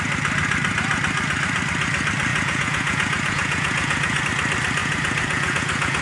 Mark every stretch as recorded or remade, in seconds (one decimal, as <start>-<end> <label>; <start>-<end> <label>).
0.0-2.3 recorded; 2.3-4.2 remade; 4.2-4.8 recorded; 4.8-6.0 remade